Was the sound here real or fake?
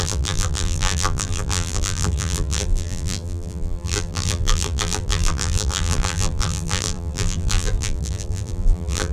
fake